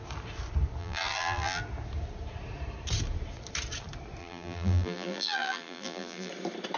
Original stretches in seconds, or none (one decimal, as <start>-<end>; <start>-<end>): 0.0-0.8; 1.6-4.2; 6.3-6.8